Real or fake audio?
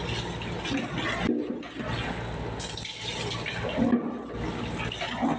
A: real